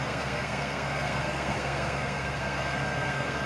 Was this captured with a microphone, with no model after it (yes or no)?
no